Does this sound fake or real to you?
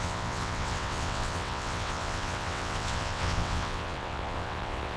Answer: fake